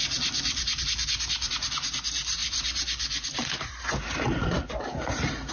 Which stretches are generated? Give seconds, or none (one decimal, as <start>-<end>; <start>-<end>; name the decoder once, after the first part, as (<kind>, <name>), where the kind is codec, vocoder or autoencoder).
2.4-5.5 (vocoder, BigVGAN v2)